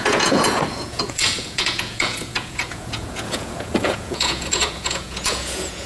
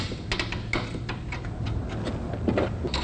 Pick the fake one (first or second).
first